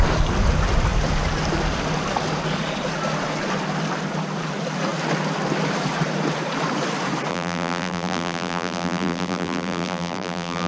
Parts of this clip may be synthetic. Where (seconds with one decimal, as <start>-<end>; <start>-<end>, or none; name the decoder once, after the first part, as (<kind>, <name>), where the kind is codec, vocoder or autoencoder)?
7.3-10.7 (vocoder, BigVGAN v2)